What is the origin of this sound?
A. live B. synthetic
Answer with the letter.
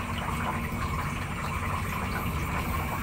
A